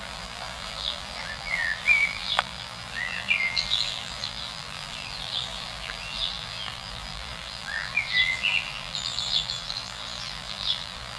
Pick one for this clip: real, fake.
fake